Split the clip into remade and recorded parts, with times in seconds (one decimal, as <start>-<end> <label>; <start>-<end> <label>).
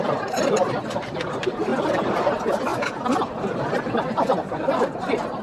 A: 0.0-5.4 recorded